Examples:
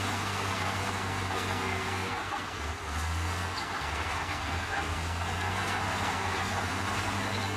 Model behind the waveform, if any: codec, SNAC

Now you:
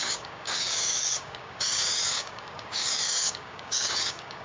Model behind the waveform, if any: codec, DAC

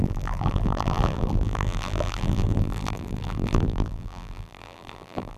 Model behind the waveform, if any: vocoder, BigVGAN v2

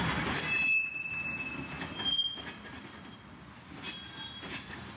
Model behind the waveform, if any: none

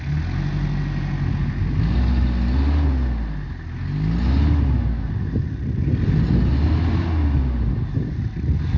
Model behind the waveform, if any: none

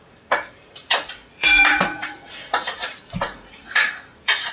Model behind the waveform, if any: vocoder, Vocos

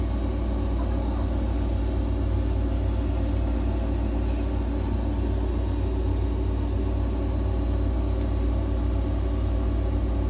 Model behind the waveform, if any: none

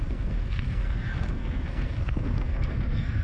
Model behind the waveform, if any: codec, SNAC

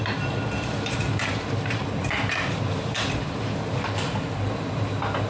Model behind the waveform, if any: vocoder, BigVGAN v2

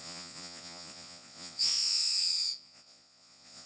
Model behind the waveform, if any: vocoder, Vocos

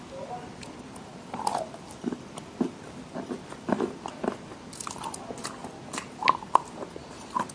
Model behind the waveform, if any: none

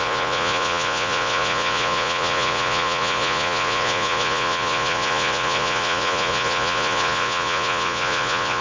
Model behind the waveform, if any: vocoder, Vocos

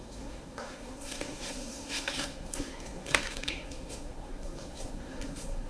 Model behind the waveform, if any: codec, SNAC